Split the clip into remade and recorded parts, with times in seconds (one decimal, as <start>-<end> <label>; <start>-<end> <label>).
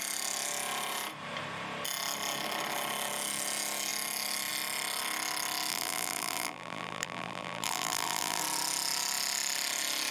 0.0-5.7 recorded; 5.7-8.4 remade; 8.4-10.1 recorded